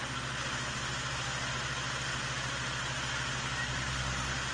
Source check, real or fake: real